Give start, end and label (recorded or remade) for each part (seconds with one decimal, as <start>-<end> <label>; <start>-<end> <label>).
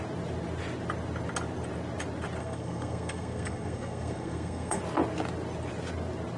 0.0-2.4 recorded; 2.4-4.8 remade; 4.8-6.4 recorded